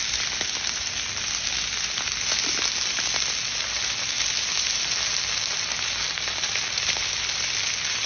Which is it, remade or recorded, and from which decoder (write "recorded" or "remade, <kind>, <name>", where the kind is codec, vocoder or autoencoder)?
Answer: recorded